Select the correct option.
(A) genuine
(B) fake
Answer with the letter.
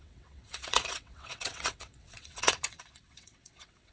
B